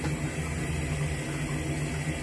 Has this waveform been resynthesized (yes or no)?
no